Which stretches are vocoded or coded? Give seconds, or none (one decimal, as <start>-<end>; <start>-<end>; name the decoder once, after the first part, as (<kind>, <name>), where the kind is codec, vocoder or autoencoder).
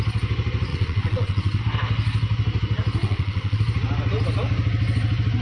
0.7-1.6 (vocoder, WaveNeXt); 3.0-3.6